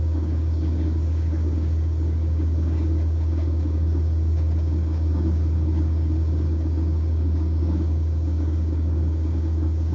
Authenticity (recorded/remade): remade